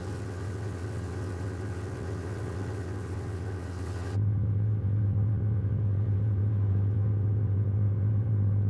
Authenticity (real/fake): fake